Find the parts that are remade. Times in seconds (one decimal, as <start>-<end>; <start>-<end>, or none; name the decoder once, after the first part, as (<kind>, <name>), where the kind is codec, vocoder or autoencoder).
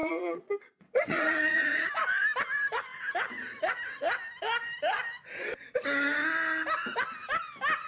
0.0-1.9 (vocoder, Vocos)